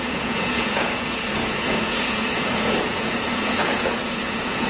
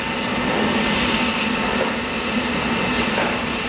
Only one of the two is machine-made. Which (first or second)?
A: first